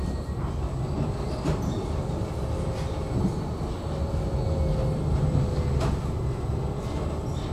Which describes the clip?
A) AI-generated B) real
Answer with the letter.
B